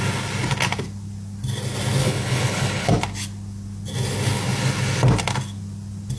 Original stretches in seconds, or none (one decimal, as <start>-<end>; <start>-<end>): 0.0-2.0; 2.9-6.2